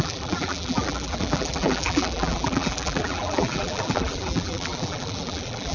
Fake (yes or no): yes